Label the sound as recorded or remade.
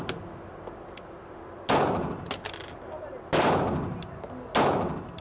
recorded